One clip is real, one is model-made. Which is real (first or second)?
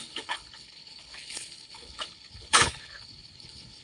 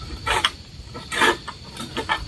second